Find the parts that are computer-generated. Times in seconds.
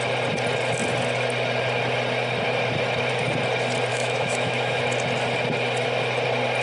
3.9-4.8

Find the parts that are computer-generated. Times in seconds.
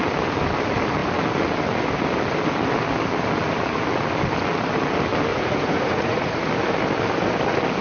5.3-6.5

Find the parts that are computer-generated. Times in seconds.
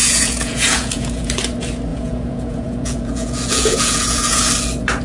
0.0-1.3; 1.9-4.5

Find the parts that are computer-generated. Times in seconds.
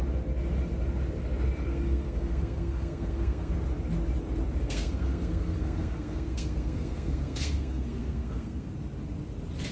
1.7-3.5; 4.6-8.7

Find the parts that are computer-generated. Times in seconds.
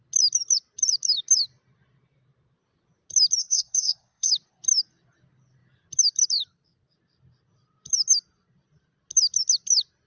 3.4-4.3